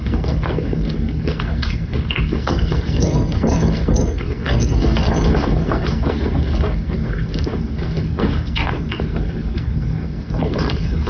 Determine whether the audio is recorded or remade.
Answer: remade